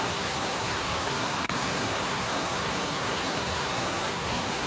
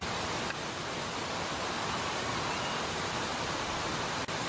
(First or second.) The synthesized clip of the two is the first